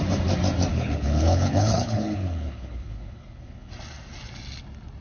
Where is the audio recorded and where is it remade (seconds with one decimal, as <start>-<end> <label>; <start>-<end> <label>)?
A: 0.0-0.7 recorded; 0.7-3.7 remade; 3.7-5.0 recorded